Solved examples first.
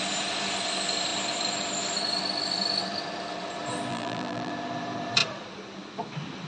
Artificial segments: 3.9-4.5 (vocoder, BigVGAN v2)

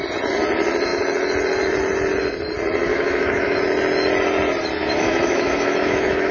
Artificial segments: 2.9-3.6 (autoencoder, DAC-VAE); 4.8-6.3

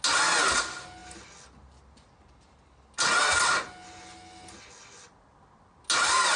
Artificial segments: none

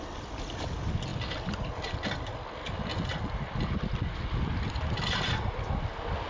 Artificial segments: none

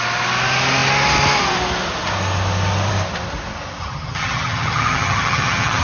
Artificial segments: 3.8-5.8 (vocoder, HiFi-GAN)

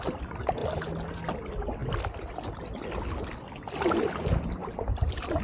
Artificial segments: 4.6-5.4 (vocoder, BigVGAN v2)

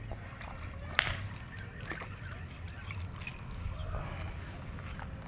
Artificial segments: none